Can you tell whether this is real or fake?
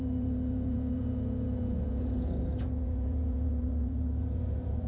fake